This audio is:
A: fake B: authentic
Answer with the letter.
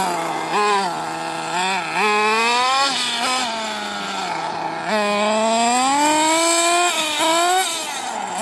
B